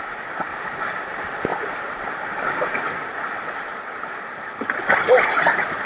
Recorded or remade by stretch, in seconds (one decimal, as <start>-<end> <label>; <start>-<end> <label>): 0.0-5.9 recorded